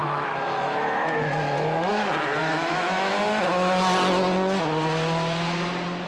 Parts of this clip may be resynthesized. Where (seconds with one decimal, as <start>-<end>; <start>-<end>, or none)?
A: 0.0-1.9; 2.4-3.1